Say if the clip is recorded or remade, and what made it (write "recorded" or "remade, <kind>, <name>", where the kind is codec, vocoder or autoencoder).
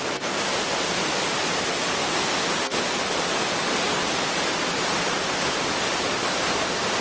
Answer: recorded